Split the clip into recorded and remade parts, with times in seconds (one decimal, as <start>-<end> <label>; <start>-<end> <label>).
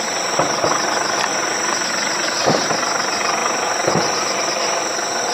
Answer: 0.0-5.3 recorded